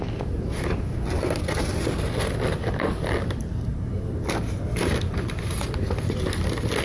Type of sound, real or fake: real